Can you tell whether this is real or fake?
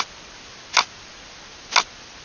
real